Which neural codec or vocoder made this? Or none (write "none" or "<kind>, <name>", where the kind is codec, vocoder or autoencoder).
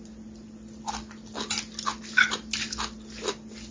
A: none